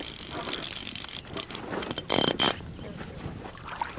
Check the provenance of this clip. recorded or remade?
recorded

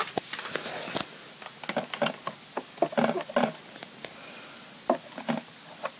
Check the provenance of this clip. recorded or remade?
recorded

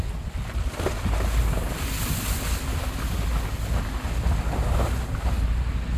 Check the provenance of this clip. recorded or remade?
recorded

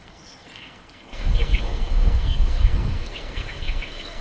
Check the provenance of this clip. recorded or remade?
remade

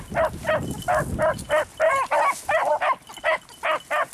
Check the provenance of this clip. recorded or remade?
recorded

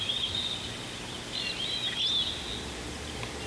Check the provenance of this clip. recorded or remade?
recorded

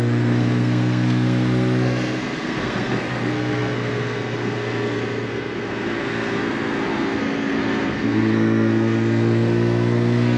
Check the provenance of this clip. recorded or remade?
remade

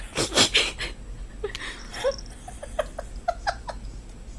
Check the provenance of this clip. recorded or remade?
recorded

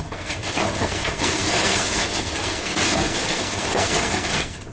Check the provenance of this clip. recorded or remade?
remade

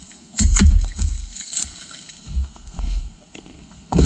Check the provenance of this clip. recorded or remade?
remade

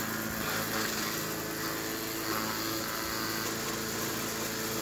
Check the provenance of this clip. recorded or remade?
recorded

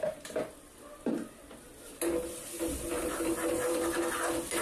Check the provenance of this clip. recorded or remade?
recorded